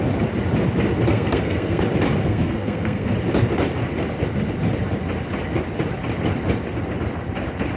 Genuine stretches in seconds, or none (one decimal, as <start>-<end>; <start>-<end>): 0.0-1.1; 1.8-2.2; 3.1-7.8